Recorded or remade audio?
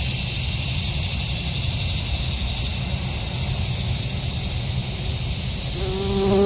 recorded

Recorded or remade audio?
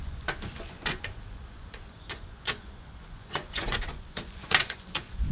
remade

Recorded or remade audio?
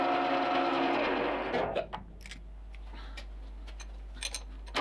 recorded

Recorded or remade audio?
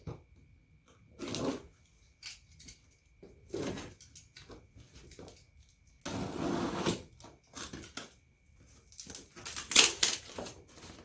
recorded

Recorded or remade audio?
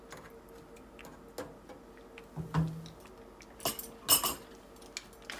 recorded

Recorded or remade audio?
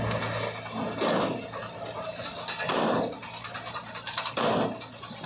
recorded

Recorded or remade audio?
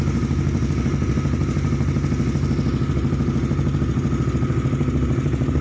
recorded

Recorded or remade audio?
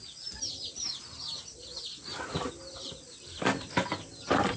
remade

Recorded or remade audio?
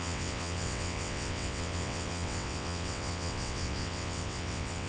remade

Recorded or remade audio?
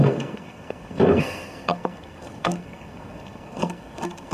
remade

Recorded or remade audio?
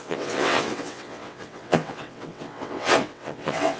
remade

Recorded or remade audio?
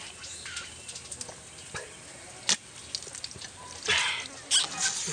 recorded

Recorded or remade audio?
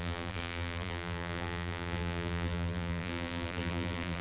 remade